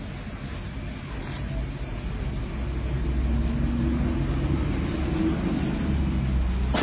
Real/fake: real